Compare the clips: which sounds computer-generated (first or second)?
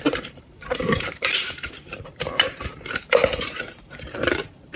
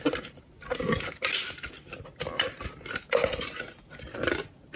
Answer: first